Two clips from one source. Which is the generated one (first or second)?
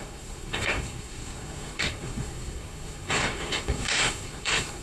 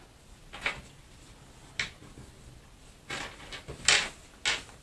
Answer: first